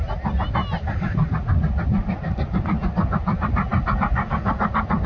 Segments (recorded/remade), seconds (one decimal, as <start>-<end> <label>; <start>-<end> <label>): 0.0-5.1 recorded